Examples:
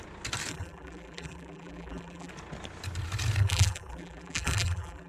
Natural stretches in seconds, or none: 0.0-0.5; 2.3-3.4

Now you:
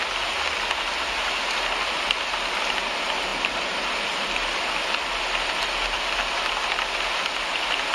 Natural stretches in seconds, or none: 0.0-3.3; 6.6-7.9

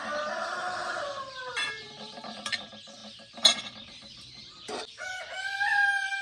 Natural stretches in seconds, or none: 0.0-0.8; 2.2-3.0; 3.6-4.0; 4.8-6.2

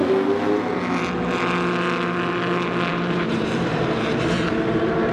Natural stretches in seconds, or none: 0.0-2.9

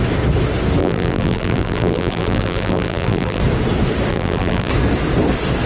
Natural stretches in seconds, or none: 0.0-0.8; 3.4-4.1; 4.7-5.7

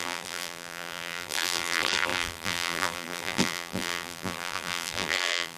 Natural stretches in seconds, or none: none

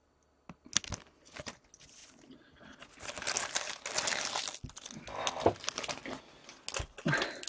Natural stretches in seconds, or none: 0.0-7.5

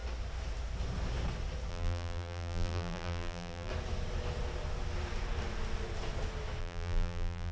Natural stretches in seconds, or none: 0.0-1.7; 3.7-6.6